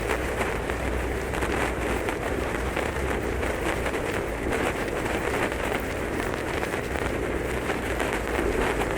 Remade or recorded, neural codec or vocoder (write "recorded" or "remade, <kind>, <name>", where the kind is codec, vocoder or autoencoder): remade, vocoder, BigVGAN v2